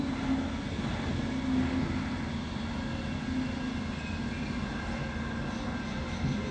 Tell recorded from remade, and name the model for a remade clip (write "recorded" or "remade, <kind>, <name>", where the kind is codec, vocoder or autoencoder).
recorded